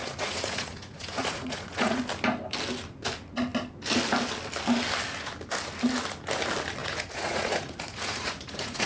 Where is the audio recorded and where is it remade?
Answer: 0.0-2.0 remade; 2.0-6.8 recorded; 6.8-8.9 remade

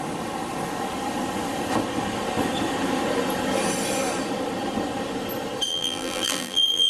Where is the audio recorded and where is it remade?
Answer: 0.0-5.7 recorded; 5.7-6.9 remade

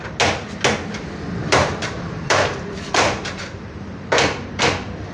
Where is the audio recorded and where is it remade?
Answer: 0.0-1.5 recorded; 1.5-4.6 remade; 4.6-5.1 recorded

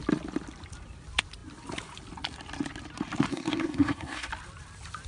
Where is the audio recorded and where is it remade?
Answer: 0.0-3.3 recorded; 3.3-4.3 remade; 4.3-5.1 recorded